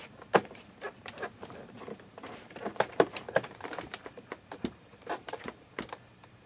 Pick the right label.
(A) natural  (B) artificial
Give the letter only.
B